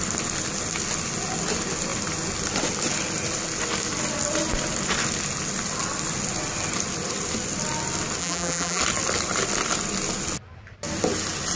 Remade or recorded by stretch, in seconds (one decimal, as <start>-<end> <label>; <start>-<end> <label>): 0.0-8.2 recorded; 8.2-8.8 remade; 8.8-11.6 recorded